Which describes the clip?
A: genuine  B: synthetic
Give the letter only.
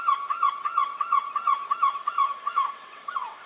B